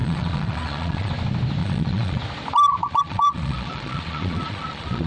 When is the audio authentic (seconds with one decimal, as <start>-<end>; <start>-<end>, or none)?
1.1-1.6; 2.2-2.8